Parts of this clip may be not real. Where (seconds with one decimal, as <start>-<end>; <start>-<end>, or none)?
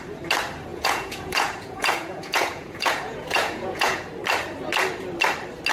0.7-4.1